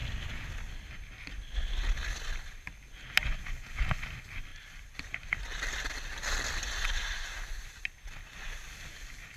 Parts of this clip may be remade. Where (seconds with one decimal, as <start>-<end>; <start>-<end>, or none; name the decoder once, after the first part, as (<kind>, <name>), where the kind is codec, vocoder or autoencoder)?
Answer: 4.5-5.0 (vocoder, BigVGAN v2)